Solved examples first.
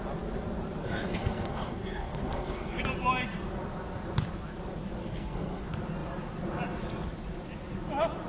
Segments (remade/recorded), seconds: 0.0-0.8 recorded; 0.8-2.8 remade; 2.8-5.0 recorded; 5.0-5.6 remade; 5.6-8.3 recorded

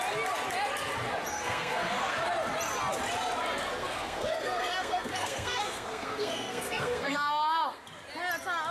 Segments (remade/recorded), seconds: 0.0-1.3 recorded; 1.3-2.1 remade; 2.1-3.8 recorded; 3.8-7.8 remade; 7.8-8.7 recorded

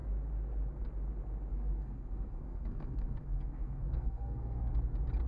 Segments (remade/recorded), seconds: 0.0-1.5 recorded; 1.5-4.7 remade; 4.7-5.3 recorded

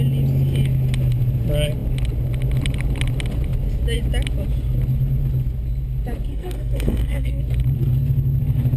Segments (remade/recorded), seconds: 0.0-6.3 recorded; 6.3-7.4 remade; 7.4-8.8 recorded

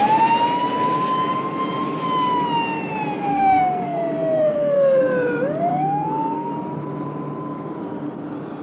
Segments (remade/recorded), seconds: 0.0-3.3 recorded; 3.3-5.0 remade; 5.0-5.7 recorded; 5.7-6.5 remade; 6.5-8.6 recorded